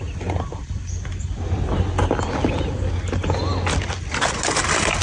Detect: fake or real real